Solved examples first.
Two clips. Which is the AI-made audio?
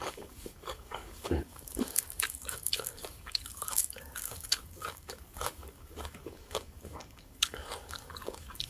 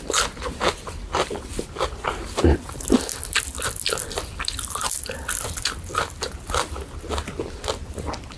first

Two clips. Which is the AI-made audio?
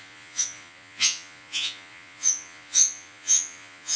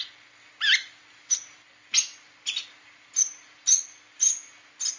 first